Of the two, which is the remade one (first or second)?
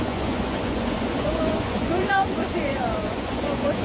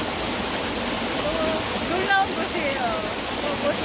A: first